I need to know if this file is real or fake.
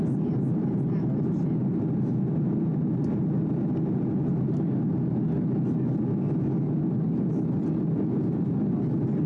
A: real